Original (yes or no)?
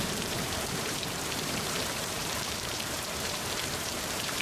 no